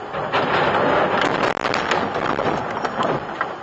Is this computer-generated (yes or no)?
no